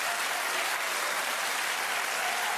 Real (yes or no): yes